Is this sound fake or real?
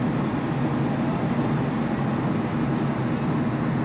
real